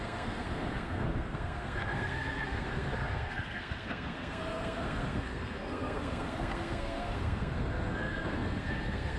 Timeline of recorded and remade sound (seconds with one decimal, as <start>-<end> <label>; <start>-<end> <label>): 0.0-9.2 remade